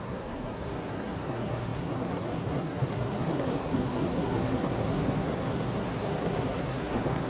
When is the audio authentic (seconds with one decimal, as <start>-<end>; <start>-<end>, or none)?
none